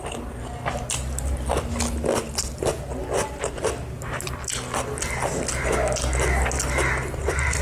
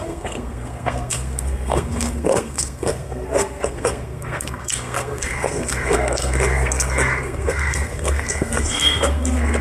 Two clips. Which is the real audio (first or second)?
first